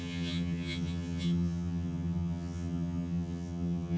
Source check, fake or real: fake